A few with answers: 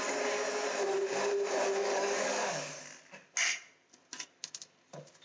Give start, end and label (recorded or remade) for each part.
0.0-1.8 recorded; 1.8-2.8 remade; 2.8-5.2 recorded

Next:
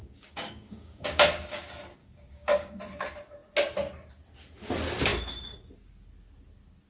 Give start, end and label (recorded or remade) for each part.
0.0-1.6 remade; 1.6-2.0 recorded; 2.0-2.8 remade; 2.8-6.9 recorded